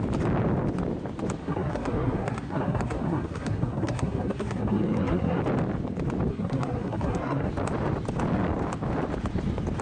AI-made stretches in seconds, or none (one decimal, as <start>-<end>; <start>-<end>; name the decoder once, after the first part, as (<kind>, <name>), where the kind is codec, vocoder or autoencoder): 1.4-5.4 (codec, SNAC); 6.3-7.5